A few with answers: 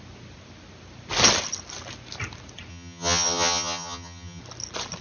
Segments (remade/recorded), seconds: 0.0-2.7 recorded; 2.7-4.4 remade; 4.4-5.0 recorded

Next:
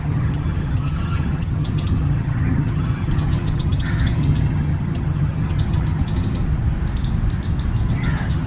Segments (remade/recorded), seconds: 0.0-6.4 remade; 6.4-7.9 recorded; 7.9-8.5 remade

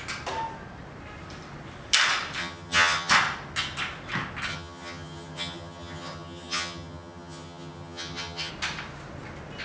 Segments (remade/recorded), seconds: 0.0-2.4 recorded; 2.4-3.1 remade; 3.1-4.5 recorded; 4.5-8.5 remade; 8.5-9.6 recorded

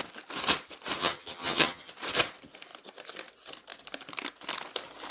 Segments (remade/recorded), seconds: 0.0-1.0 recorded; 1.0-1.9 remade; 1.9-5.1 recorded

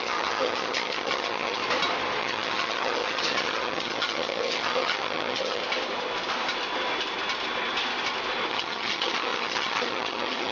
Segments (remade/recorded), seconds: 0.0-1.6 remade; 1.6-2.2 recorded; 2.2-5.6 remade; 5.6-8.5 recorded; 8.5-10.5 remade

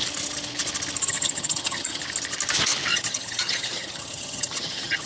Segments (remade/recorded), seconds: 0.0-1.0 recorded; 1.0-2.0 remade; 2.0-2.9 recorded; 2.9-5.1 remade